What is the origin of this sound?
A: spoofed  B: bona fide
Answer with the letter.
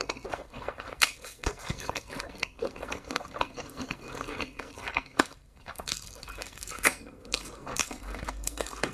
A